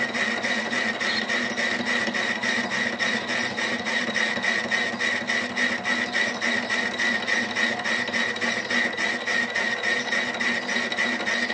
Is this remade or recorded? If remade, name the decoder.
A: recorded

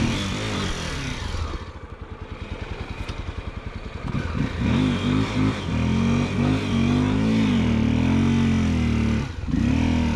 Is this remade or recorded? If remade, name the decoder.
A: recorded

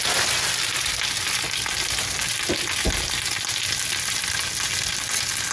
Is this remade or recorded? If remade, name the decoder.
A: recorded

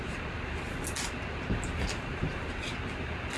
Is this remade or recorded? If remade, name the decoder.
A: recorded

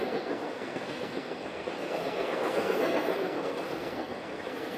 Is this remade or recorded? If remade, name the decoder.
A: remade, codec, SNAC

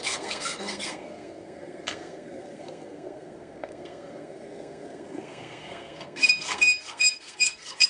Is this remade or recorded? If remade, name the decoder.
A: remade, codec, SNAC